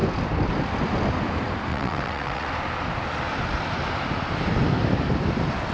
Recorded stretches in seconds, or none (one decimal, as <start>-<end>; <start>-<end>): 0.0-1.7; 2.5-5.7